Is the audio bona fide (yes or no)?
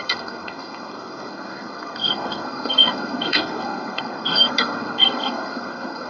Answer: no